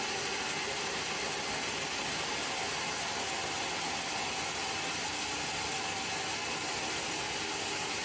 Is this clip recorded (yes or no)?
yes